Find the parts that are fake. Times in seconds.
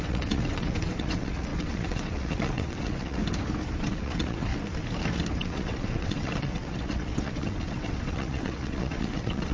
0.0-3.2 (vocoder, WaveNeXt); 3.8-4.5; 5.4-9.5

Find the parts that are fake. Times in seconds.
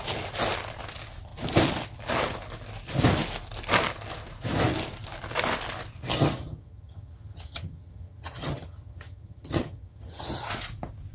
6.1-10.5 (vocoder, HiFi-GAN)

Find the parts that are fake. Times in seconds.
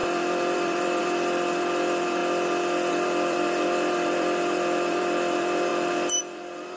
0.0-2.2 (vocoder, BigVGAN v2); 2.9-5.7; 6.2-6.8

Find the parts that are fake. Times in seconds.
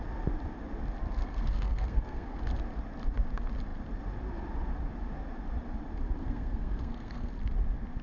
1.2-2.4 (codec, SNAC); 6.2-7.3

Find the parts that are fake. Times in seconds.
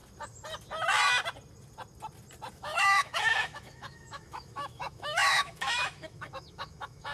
2.5-7.1 (autoencoder, DAC-VAE)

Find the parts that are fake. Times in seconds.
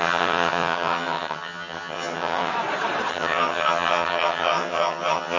0.0-2.5 (vocoder, HiFi-GAN); 3.1-5.4